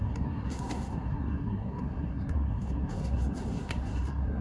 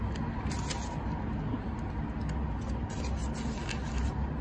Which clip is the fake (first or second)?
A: first